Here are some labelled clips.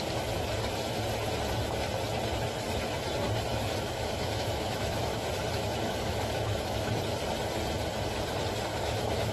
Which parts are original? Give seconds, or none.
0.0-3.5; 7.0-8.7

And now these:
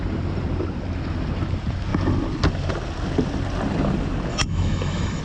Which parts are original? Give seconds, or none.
0.0-4.3